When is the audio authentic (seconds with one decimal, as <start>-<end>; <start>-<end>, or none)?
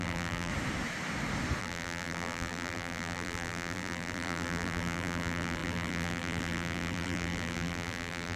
0.5-1.6